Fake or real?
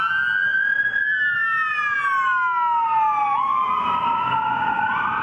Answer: real